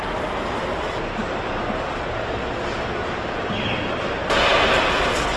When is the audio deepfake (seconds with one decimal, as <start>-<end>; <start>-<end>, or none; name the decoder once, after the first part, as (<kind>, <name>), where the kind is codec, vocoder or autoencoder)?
none

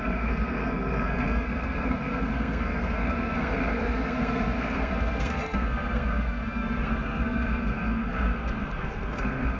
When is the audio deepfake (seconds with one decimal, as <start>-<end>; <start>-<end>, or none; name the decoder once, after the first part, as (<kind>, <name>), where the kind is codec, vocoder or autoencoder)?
0.0-9.6 (codec, SNAC)

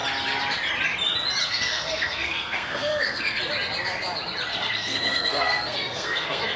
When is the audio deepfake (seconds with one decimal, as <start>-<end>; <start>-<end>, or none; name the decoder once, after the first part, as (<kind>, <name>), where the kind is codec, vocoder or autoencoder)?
1.4-3.4 (codec, SNAC); 4.5-6.6

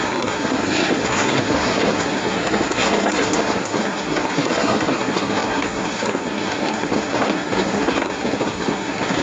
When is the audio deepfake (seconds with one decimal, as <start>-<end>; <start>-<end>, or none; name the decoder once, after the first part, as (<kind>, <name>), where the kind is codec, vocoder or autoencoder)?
0.0-9.2 (codec, SNAC)